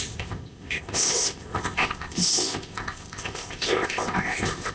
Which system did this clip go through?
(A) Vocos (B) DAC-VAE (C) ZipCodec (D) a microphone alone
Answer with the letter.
C